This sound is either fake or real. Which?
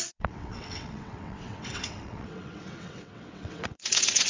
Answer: fake